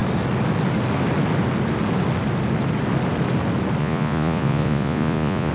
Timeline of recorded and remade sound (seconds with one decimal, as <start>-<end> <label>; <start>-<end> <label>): 0.0-3.8 recorded; 3.8-5.5 remade